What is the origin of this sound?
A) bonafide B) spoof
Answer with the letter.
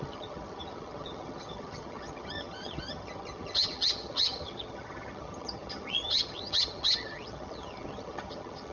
B